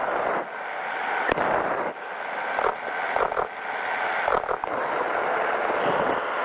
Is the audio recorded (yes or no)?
yes